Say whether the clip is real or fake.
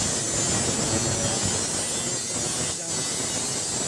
real